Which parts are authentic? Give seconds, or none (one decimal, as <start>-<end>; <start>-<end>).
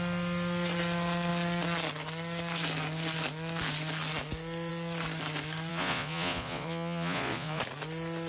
0.0-5.7; 7.6-8.3